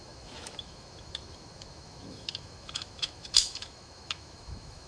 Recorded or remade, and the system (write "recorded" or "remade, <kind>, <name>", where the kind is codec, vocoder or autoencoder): remade, autoencoder, DAC-VAE